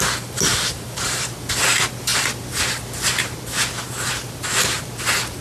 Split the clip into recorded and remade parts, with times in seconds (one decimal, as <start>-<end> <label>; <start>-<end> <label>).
0.0-0.5 recorded; 0.5-1.4 remade; 1.4-5.4 recorded